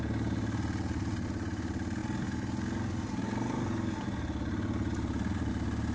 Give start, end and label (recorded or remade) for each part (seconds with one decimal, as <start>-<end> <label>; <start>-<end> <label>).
0.0-5.9 recorded